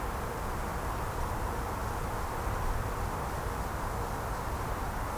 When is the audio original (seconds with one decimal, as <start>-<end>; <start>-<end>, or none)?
0.0-5.2